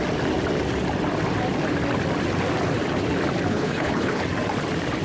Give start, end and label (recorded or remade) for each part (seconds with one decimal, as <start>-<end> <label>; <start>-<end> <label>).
0.0-3.5 recorded; 3.5-4.2 remade; 4.2-5.0 recorded